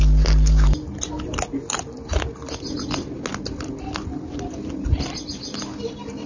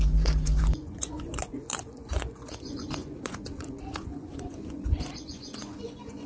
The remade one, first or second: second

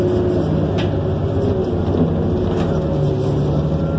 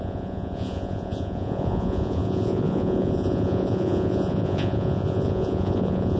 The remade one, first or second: second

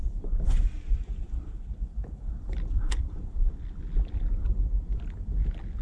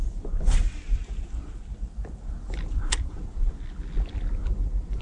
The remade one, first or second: first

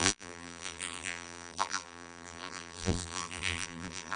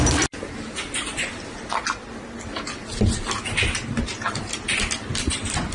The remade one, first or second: first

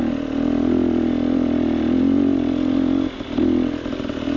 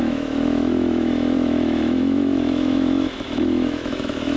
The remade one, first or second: second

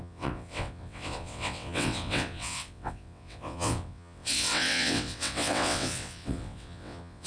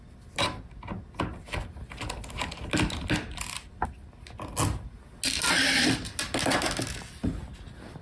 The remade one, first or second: first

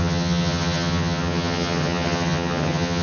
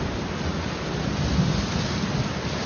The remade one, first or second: first